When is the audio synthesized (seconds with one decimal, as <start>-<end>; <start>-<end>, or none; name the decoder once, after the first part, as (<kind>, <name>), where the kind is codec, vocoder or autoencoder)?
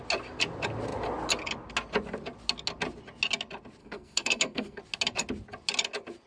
3.8-4.8 (codec, SNAC)